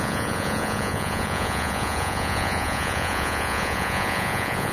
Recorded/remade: remade